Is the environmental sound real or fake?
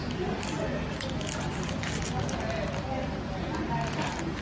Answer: real